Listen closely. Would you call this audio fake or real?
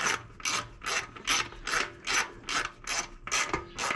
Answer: real